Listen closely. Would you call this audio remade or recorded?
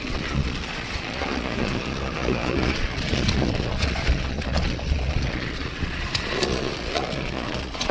remade